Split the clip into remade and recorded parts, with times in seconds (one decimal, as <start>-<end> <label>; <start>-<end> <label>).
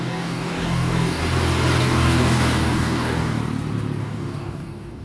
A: 0.0-1.2 remade; 1.2-1.8 recorded; 1.8-3.4 remade; 3.4-4.0 recorded; 4.0-5.0 remade